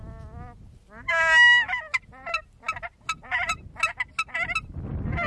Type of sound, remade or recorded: recorded